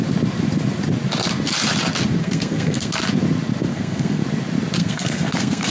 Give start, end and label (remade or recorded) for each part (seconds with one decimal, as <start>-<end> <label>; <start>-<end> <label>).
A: 0.0-2.2 recorded; 2.2-2.9 remade; 2.9-3.7 recorded; 3.7-4.2 remade; 4.2-4.8 recorded; 4.8-5.7 remade